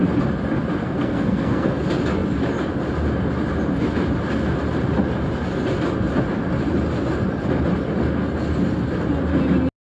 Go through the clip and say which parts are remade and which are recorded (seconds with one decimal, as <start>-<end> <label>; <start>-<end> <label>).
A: 0.0-0.8 recorded; 0.8-1.8 remade; 1.8-9.8 recorded